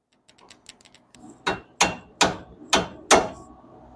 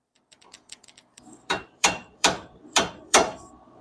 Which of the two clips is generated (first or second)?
second